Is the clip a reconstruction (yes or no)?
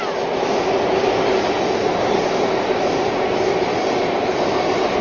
no